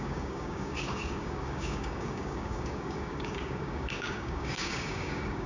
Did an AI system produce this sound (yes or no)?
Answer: yes